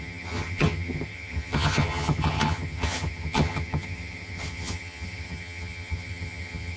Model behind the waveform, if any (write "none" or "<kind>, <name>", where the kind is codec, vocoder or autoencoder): vocoder, HiFi-GAN